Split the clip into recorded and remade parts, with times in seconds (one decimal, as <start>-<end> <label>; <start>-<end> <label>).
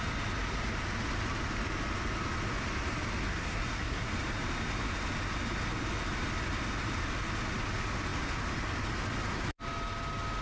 0.0-3.3 recorded; 3.3-4.1 remade; 4.1-10.4 recorded